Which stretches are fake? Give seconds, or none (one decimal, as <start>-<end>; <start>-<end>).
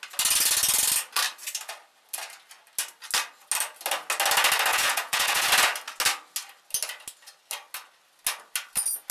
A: 4.7-5.5